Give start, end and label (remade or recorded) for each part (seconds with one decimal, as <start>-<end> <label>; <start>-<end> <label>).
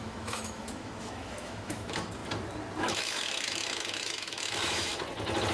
0.0-2.2 remade; 2.2-2.8 recorded; 2.8-4.9 remade; 4.9-5.5 recorded